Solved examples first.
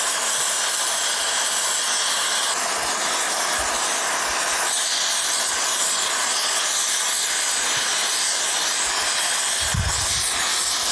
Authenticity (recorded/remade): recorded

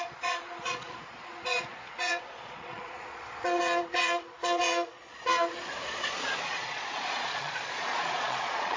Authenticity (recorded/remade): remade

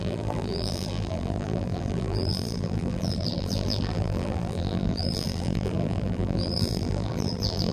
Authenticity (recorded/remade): remade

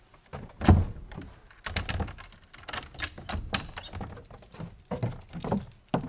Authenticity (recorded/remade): recorded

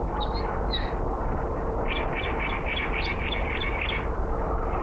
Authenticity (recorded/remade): recorded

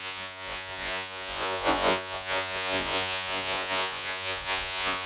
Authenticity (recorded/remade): remade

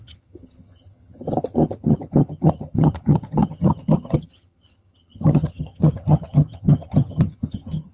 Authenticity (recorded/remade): remade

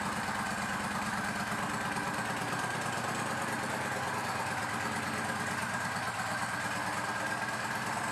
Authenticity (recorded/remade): recorded